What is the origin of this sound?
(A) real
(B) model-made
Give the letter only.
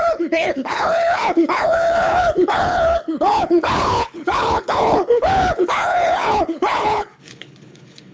B